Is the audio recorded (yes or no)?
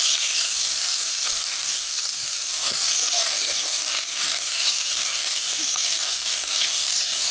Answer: no